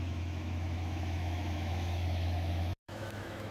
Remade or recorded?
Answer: remade